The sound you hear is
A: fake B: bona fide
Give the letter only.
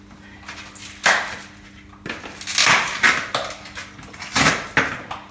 B